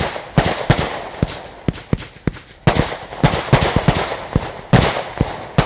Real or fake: real